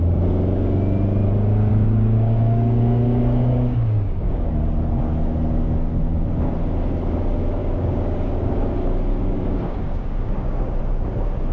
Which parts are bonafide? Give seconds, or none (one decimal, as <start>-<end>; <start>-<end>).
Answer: 0.0-1.7; 4.5-7.6; 8.7-9.1; 10.8-11.5

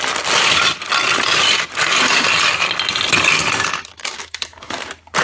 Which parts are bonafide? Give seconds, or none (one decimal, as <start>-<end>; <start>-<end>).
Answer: 0.0-3.9; 4.8-5.2

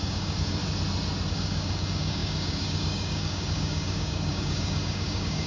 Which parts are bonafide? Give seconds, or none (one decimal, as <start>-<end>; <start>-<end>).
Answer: 0.6-1.3

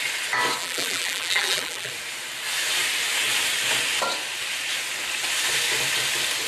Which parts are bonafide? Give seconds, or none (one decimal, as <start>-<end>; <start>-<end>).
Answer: 0.0-0.6; 1.9-6.5

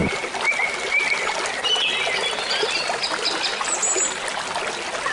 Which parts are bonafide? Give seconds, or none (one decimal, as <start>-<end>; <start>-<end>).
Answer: 0.0-5.1

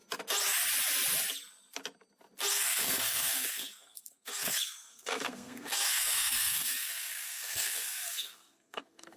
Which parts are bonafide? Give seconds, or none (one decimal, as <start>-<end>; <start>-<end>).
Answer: 0.0-2.5

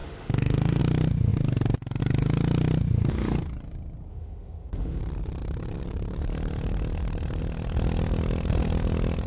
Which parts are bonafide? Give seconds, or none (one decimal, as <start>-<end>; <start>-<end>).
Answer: 0.8-4.1; 5.0-9.3